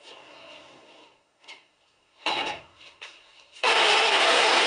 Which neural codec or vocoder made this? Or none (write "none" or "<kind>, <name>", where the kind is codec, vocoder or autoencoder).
codec, SNAC